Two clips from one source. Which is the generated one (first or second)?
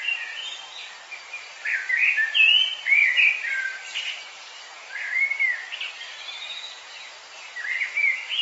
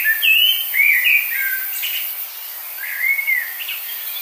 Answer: first